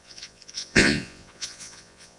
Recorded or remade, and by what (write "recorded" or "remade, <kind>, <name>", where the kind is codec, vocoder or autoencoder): remade, vocoder, Vocos